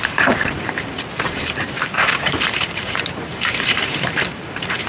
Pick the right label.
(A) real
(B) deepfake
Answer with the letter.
B